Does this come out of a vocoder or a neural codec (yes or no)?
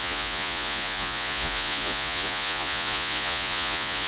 yes